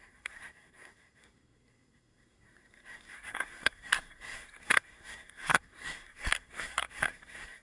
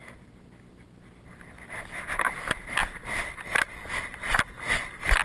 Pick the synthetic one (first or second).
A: first